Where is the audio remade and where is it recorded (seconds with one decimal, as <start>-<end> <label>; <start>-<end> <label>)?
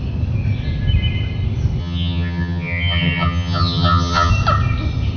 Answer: 0.0-1.8 recorded; 1.8-4.3 remade; 4.3-5.2 recorded